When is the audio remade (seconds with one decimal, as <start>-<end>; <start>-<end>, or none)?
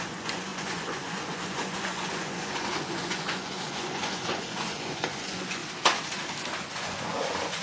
0.0-5.6; 6.6-7.6